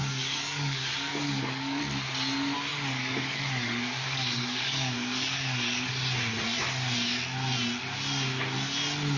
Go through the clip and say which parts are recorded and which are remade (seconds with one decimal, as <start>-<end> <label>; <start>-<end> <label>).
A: 0.0-1.8 remade; 1.8-2.7 recorded; 2.7-5.9 remade; 5.9-9.2 recorded

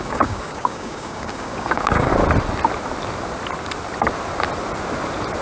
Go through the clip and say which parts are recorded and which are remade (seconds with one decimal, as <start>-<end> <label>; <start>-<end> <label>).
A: 0.0-2.1 remade; 2.1-5.4 recorded

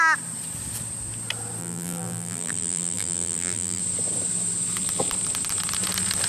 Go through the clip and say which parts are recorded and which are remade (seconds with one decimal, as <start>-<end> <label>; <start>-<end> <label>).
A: 0.0-1.6 recorded; 1.6-3.8 remade; 3.8-6.3 recorded

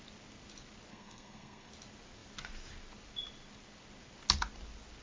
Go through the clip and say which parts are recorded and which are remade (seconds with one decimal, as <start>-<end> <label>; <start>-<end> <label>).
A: 0.0-0.9 recorded; 0.9-1.7 remade; 1.7-5.0 recorded

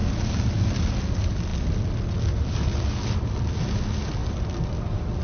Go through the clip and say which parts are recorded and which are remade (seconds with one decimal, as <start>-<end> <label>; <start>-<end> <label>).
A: 0.0-5.2 recorded

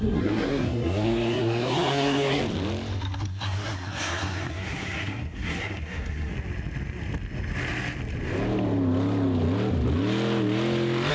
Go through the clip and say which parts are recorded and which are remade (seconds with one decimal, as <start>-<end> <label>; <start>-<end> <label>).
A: 0.0-2.4 remade; 2.4-3.2 recorded; 3.2-6.3 remade; 6.3-11.1 recorded